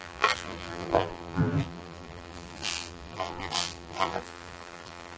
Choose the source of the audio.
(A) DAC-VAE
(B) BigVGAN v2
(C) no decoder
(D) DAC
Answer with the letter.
B